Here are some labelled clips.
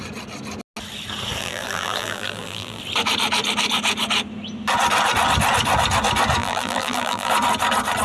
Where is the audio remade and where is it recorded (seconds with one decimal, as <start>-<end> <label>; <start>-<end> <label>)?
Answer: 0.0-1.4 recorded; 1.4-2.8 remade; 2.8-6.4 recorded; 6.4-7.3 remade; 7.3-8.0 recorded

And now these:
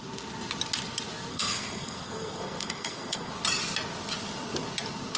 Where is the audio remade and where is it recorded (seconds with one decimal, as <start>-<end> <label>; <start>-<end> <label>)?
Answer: 0.0-1.3 recorded; 1.3-3.3 remade; 3.3-5.2 recorded

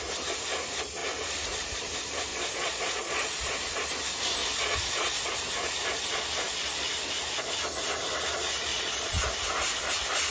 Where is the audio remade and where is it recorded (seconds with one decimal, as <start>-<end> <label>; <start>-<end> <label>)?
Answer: 0.0-2.3 recorded; 2.3-3.6 remade; 3.6-4.4 recorded; 4.4-5.3 remade; 5.3-8.7 recorded; 8.7-9.3 remade; 9.3-10.3 recorded

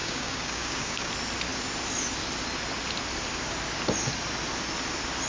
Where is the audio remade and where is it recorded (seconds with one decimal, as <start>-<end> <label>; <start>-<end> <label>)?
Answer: 0.0-1.1 remade; 1.1-5.3 recorded